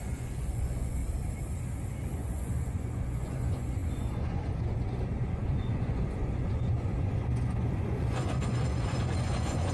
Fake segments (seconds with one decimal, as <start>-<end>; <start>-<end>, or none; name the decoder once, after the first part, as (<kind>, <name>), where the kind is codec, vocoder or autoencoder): 0.0-1.0 (vocoder, Vocos); 2.1-9.7